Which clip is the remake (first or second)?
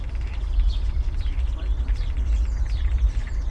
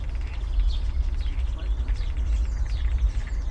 first